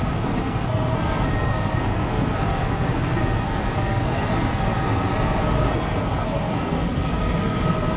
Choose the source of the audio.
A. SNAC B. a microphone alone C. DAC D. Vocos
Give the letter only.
A